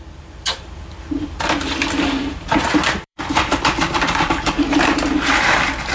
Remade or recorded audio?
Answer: remade